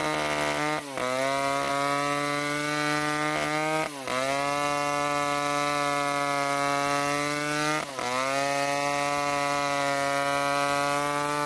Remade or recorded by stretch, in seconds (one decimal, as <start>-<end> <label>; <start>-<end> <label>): 0.0-11.5 recorded